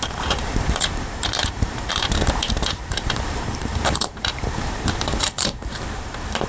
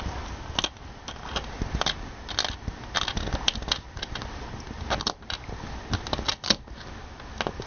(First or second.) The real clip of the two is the second